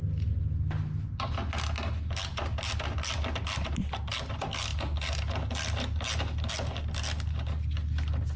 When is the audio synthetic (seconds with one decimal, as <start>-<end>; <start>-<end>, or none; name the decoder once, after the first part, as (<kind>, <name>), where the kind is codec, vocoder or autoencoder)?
none